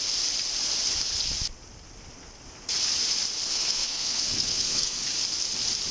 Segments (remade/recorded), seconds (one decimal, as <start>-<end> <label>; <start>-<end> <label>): 0.0-3.5 recorded; 3.5-5.1 remade; 5.1-5.9 recorded